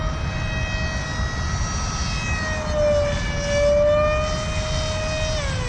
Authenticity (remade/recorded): recorded